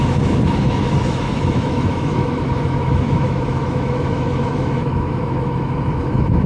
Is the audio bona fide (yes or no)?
no